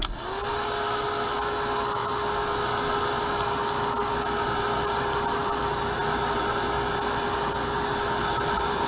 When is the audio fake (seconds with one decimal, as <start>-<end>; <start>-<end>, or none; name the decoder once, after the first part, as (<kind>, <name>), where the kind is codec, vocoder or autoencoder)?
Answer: none